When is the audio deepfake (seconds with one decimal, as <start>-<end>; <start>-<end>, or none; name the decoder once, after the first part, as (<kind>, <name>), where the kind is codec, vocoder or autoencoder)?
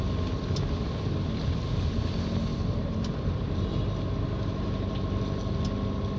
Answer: 2.5-5.0 (vocoder, BigVGAN v2)